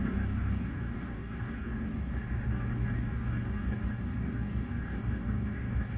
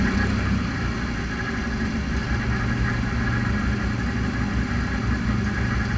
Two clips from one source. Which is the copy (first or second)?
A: first